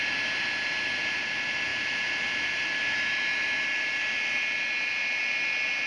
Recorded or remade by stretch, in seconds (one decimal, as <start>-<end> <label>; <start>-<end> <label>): 0.0-5.9 recorded